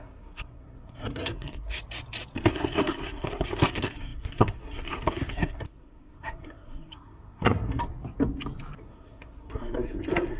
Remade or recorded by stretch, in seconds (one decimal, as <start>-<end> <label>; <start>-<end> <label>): 0.0-1.8 remade; 1.8-2.5 recorded; 2.5-7.8 remade; 7.8-8.8 recorded; 8.8-10.4 remade